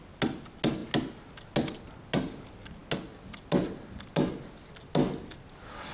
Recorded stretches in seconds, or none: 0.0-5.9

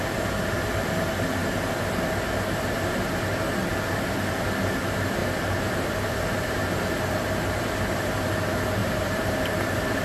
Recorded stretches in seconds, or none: 0.0-5.2; 8.1-8.8; 9.4-10.0

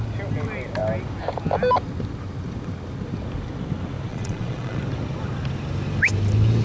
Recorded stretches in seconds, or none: 0.0-4.1; 4.8-6.6